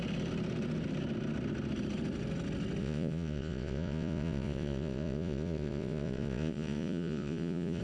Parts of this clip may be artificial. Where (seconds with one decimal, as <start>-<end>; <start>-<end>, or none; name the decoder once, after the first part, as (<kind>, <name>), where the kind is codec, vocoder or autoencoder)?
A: 2.8-7.8 (vocoder, Vocos)